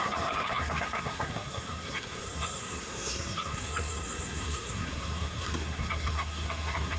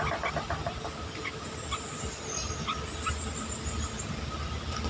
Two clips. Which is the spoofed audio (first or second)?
first